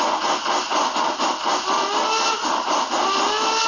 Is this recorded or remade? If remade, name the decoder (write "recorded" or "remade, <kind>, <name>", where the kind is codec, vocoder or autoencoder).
recorded